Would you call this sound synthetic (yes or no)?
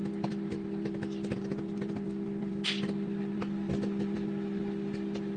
no